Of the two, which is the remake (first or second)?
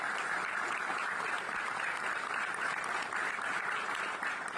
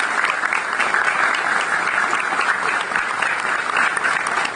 first